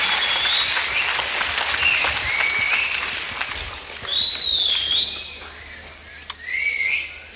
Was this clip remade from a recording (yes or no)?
no